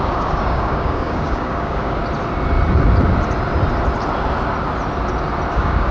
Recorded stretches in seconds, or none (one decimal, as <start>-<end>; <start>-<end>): 2.0-5.5

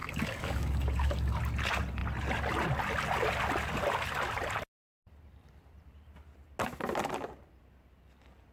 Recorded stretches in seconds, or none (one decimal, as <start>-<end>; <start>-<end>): 1.4-8.5

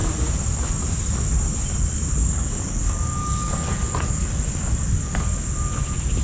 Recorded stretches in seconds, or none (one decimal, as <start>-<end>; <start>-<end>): 0.0-2.2; 5.2-6.2

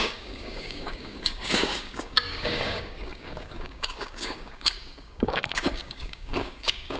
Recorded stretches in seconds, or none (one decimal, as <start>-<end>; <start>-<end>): none

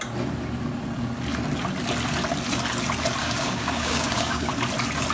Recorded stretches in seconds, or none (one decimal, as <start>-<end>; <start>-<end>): 0.0-3.2; 4.5-5.1

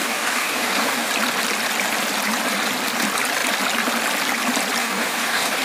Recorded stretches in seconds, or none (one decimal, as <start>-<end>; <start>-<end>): 1.1-4.8